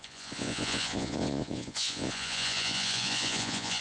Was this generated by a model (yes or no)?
yes